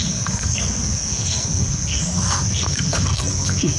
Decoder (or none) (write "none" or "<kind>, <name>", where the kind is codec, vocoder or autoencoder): codec, SNAC